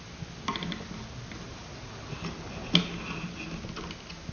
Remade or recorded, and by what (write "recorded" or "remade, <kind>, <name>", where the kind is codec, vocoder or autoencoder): recorded